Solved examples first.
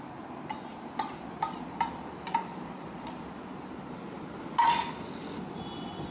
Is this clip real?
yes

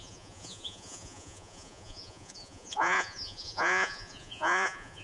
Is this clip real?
no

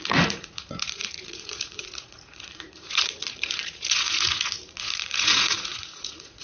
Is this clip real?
no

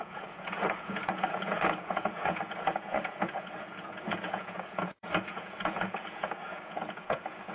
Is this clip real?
no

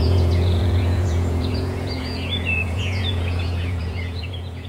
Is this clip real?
no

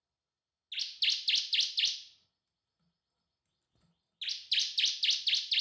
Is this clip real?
yes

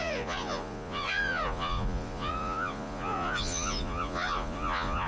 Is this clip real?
no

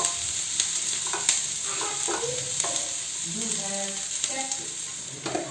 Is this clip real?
yes